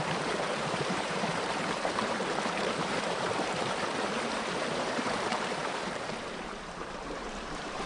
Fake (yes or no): yes